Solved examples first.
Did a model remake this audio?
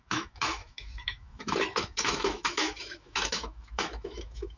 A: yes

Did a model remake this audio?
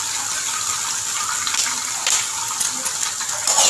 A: no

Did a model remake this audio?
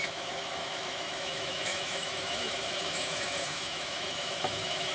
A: yes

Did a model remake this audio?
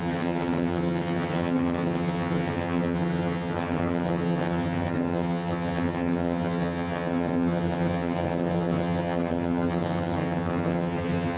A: yes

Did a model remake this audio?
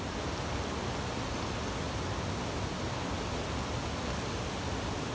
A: no